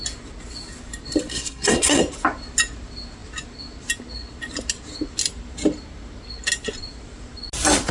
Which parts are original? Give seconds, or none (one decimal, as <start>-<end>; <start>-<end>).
0.0-1.3; 2.0-7.9